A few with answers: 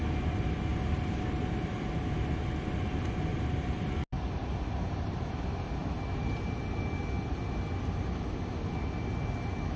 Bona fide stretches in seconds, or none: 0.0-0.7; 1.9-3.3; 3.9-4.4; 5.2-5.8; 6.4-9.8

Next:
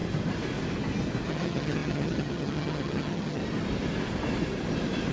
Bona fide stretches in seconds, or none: 0.0-1.3; 3.4-5.1

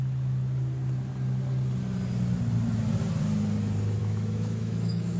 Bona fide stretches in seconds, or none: 0.0-4.0